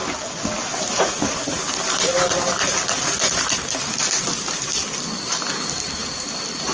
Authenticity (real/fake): real